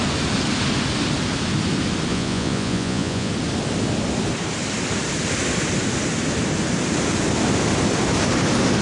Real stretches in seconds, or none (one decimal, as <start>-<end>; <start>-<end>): 0.0-2.1; 3.3-8.8